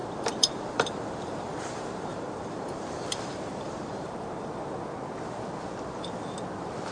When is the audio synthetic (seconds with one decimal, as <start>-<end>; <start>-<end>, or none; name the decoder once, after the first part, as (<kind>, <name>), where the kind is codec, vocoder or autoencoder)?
0.0-4.1 (vocoder, BigVGAN v2)